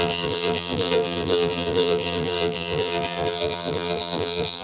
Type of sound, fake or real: fake